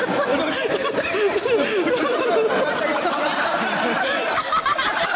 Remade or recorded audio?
recorded